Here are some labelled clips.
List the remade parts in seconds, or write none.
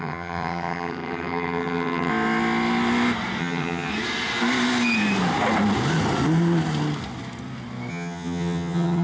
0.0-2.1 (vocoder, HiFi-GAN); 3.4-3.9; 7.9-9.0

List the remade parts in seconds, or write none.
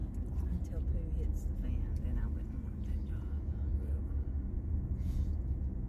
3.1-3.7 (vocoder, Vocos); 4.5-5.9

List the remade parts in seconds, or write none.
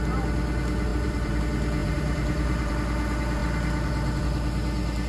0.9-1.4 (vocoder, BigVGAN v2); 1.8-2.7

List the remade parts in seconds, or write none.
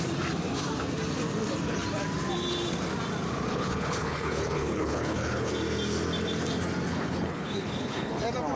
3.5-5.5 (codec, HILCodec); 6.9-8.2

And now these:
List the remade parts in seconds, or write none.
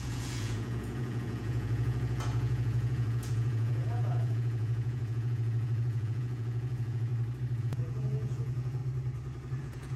0.0-7.1 (vocoder, Vocos); 7.6-8.8; 9.6-10.0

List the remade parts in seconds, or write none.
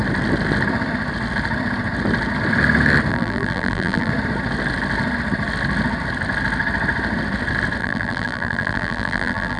3.1-4.1 (vocoder, BigVGAN v2); 7.8-9.6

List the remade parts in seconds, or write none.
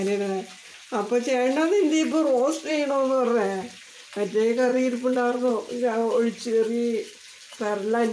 4.7-5.5 (vocoder, Vocos)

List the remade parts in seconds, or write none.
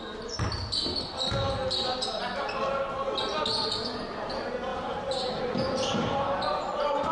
4.7-5.4 (vocoder, BigVGAN v2)